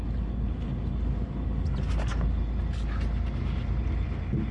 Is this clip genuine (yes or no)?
yes